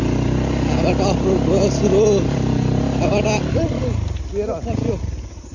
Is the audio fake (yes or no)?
no